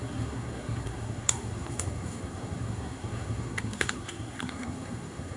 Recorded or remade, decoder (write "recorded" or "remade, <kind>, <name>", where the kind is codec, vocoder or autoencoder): remade, codec, SNAC